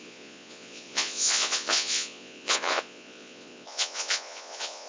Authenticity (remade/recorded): remade